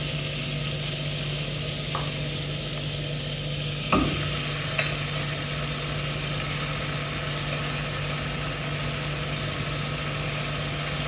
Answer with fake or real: real